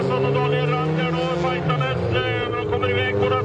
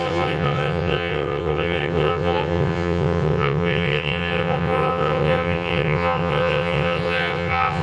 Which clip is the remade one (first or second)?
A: second